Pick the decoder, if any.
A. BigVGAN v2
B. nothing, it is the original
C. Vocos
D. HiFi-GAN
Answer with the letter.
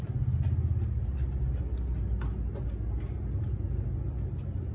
B